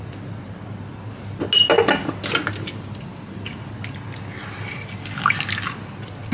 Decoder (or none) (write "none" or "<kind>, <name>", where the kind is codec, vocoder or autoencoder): none